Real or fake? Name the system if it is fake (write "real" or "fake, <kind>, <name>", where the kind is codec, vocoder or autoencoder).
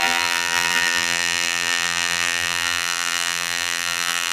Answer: fake, vocoder, BigVGAN v2